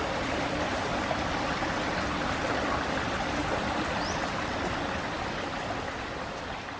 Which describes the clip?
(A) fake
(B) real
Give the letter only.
B